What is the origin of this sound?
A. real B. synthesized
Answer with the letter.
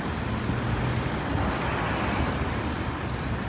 A